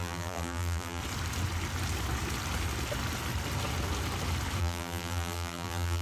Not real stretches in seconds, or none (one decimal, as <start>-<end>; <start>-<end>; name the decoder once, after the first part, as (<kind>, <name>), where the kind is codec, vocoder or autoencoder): 0.0-1.0 (vocoder, BigVGAN v2); 4.6-6.0